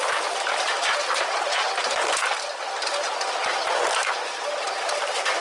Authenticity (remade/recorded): remade